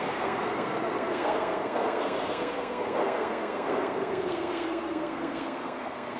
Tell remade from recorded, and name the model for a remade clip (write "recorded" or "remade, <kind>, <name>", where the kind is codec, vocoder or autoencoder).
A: remade, codec, SNAC